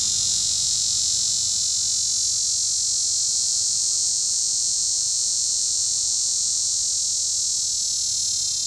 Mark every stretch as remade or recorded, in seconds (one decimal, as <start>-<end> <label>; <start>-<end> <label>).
0.0-1.6 remade; 1.6-3.3 recorded; 3.3-6.8 remade; 6.8-8.7 recorded